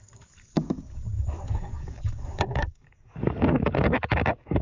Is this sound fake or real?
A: fake